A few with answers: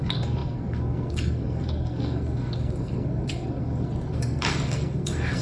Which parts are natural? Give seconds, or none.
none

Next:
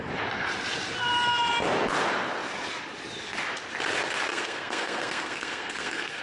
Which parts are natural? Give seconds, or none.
0.0-4.3

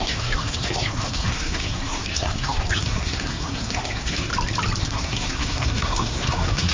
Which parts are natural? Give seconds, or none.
4.3-4.8

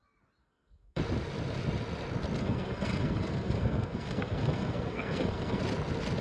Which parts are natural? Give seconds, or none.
0.0-0.4; 1.0-2.4; 5.6-6.2

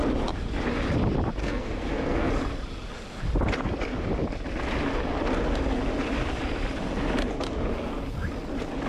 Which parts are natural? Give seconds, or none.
0.0-1.4; 2.3-8.9

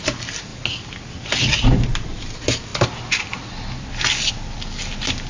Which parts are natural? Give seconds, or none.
0.0-5.3

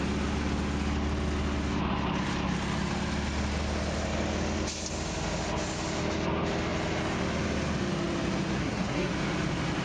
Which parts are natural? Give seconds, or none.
0.0-8.6; 9.1-9.8

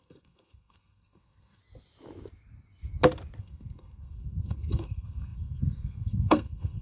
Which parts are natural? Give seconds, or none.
1.6-3.4